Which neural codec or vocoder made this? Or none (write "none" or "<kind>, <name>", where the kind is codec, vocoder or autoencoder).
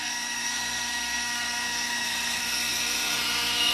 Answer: codec, SNAC